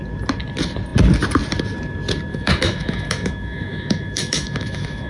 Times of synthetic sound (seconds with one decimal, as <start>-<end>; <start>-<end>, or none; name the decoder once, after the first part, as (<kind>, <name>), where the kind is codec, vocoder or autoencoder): 2.3-5.1 (autoencoder, DAC-VAE)